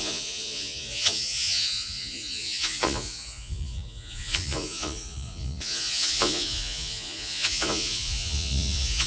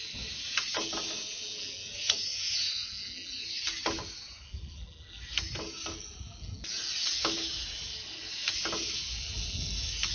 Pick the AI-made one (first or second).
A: first